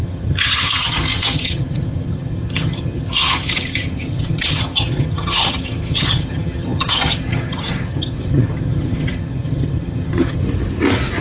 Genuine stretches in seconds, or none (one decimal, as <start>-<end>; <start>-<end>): 10.4-11.2